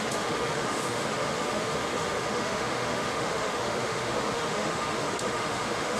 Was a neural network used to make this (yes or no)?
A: yes